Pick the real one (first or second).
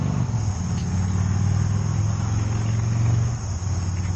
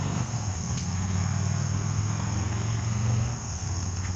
first